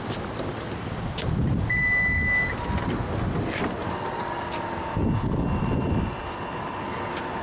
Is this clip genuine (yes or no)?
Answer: yes